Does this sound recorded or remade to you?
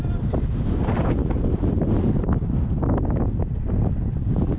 recorded